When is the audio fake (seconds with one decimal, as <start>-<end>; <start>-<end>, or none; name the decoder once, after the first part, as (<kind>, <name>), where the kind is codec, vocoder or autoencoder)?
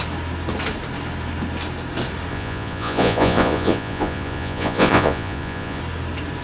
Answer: 2.3-5.8 (vocoder, Vocos)